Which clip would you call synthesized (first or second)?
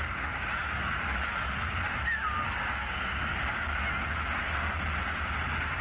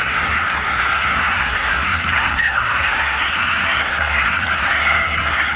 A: second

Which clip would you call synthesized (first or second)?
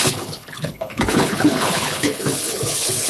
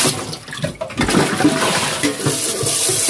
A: first